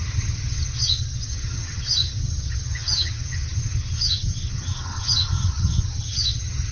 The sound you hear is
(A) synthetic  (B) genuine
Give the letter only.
A